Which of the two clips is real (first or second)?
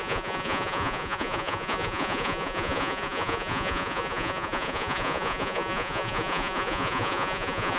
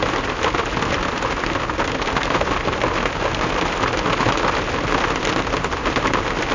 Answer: second